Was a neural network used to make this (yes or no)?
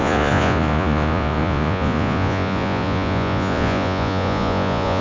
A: yes